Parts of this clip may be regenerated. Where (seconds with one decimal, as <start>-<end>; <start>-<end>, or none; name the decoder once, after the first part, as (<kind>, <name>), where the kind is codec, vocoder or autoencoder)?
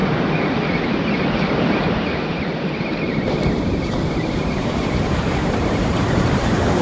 4.1-6.8 (vocoder, BigVGAN v2)